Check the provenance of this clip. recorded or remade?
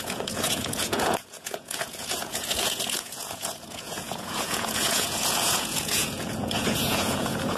remade